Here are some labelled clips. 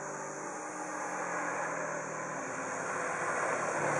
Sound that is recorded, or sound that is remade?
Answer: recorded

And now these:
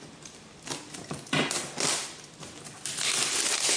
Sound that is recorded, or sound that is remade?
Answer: recorded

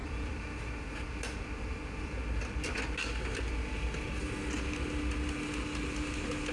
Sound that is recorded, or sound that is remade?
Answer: recorded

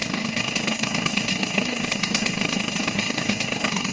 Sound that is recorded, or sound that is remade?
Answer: remade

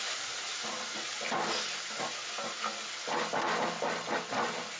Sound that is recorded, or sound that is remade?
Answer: recorded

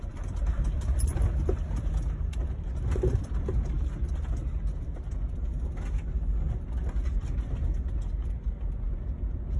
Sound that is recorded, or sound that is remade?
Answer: recorded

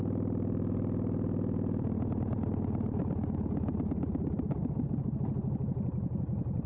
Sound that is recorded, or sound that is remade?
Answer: recorded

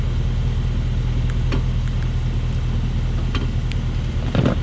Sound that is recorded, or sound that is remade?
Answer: recorded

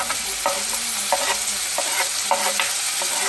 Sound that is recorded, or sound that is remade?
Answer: recorded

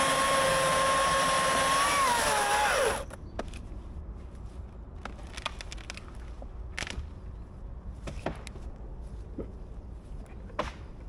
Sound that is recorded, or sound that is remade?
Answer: recorded